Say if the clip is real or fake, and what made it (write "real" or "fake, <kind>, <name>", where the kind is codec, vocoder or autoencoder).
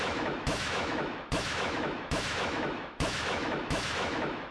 fake, autoencoder, DAC-VAE